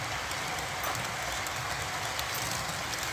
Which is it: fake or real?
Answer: real